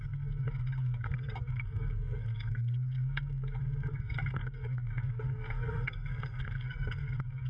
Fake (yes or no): yes